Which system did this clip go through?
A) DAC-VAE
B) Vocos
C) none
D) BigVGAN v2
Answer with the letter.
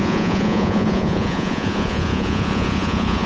B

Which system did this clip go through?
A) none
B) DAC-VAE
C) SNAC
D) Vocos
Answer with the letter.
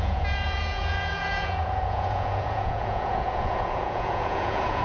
D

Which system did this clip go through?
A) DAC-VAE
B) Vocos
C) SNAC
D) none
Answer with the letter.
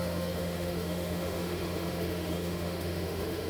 A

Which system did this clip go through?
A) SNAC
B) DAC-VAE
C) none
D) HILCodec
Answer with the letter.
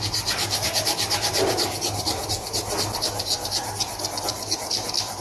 C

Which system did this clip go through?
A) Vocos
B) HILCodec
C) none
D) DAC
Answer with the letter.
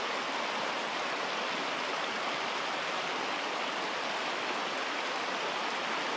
C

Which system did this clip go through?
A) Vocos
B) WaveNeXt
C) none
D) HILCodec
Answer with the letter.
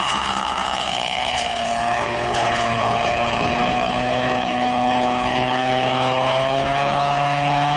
D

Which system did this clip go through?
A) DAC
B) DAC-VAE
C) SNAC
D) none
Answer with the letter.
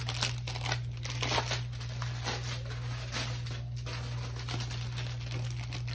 D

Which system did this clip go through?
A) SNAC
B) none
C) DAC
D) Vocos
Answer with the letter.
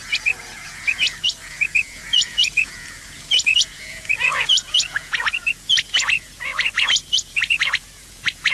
D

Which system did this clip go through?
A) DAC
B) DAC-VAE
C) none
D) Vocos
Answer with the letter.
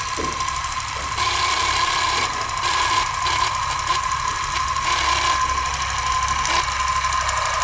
C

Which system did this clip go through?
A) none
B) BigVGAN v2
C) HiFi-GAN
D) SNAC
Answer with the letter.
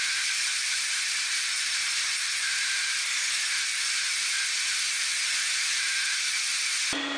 A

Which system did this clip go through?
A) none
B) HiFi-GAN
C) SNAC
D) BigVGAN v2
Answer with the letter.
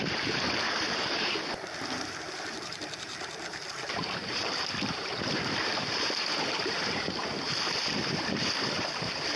D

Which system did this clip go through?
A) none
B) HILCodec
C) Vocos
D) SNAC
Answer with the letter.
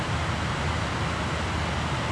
A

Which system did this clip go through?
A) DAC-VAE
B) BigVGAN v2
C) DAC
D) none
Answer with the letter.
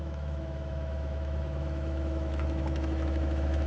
A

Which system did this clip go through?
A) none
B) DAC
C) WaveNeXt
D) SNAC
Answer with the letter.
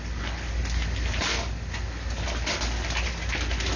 A